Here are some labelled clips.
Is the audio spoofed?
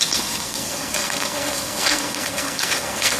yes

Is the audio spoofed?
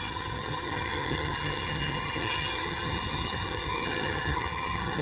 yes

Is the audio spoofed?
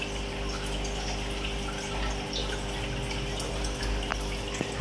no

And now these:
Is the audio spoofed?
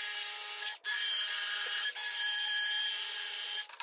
no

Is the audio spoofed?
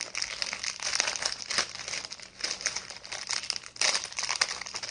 no